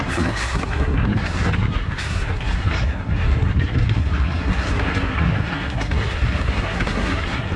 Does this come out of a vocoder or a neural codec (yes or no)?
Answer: yes